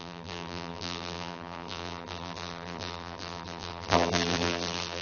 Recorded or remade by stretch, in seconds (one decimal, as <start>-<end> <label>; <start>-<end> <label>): 0.0-5.0 remade